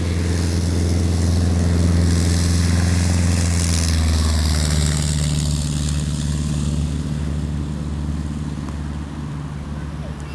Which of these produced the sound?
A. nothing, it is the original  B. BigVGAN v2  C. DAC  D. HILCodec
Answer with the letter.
A